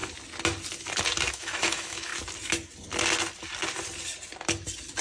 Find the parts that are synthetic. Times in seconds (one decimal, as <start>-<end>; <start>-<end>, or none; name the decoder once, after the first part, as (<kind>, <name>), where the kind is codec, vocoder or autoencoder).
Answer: 1.3-2.1 (autoencoder, DAC-VAE)